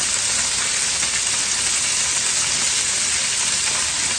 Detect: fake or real real